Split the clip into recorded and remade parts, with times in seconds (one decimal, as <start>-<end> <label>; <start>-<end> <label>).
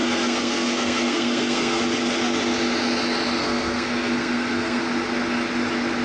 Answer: 0.0-1.8 remade; 1.8-3.4 recorded; 3.4-4.8 remade; 4.8-6.0 recorded